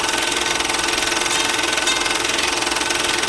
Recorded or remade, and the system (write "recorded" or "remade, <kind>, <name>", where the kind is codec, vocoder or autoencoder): recorded